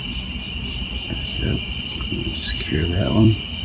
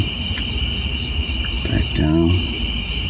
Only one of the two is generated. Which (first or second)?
first